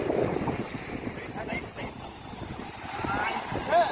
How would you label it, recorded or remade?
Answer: recorded